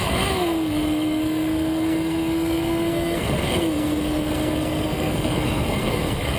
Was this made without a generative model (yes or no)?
no